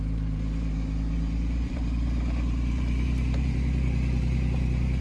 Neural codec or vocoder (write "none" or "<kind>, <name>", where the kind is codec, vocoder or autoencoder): vocoder, BigVGAN v2